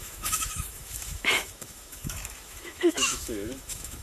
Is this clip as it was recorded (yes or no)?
no